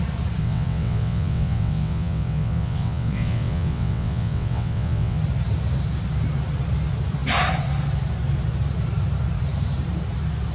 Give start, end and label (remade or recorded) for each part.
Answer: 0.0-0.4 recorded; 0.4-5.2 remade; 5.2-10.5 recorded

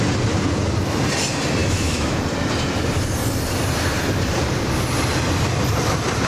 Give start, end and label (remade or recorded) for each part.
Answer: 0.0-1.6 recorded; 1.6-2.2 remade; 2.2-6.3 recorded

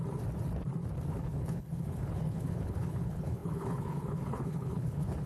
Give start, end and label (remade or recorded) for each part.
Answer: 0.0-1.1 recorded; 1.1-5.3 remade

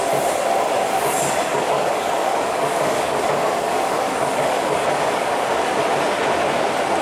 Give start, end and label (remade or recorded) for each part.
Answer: 0.0-1.5 recorded; 1.5-5.7 remade; 5.7-7.0 recorded